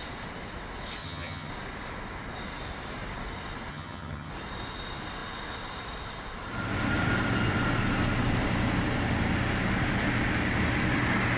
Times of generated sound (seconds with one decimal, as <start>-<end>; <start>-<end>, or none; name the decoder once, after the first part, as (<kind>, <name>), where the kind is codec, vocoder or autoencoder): 1.0-1.5 (vocoder, HiFi-GAN); 3.7-4.3